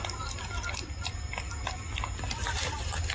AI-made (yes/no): no